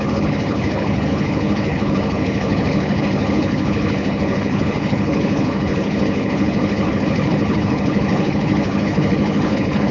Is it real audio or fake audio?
fake